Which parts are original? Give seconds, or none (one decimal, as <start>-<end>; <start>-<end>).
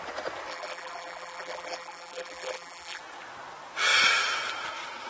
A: 0.0-0.5; 3.0-5.1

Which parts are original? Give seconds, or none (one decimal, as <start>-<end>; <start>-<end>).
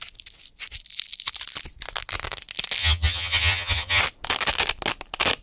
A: 0.0-2.8; 4.0-5.4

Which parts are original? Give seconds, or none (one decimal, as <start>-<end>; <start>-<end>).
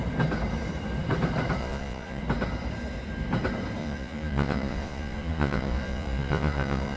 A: 0.0-1.6; 2.2-3.8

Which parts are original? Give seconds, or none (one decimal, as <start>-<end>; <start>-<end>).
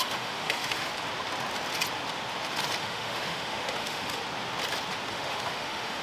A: 0.9-2.8; 4.2-5.1